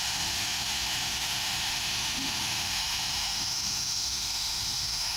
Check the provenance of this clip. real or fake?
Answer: fake